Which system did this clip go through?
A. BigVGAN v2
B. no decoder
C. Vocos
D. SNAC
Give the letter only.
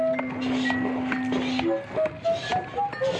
B